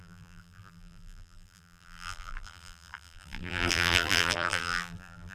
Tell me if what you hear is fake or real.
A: fake